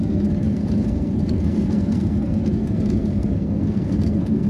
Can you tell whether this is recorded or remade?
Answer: remade